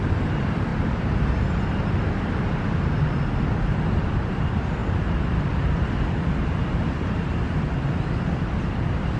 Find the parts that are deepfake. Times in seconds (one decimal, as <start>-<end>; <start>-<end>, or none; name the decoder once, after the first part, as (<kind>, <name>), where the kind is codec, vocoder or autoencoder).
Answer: 0.0-0.7 (vocoder, BigVGAN v2); 3.4-4.8; 6.1-7.3; 8.6-9.2